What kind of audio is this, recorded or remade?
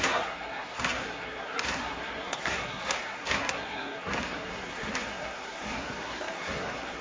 remade